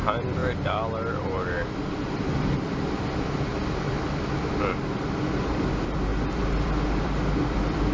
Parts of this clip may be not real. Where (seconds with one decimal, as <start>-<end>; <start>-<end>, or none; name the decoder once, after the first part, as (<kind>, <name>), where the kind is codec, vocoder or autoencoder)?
0.0-0.4 (vocoder, BigVGAN v2); 2.1-3.5; 5.4-7.9